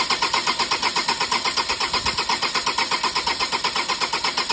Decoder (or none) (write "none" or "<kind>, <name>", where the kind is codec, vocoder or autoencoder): none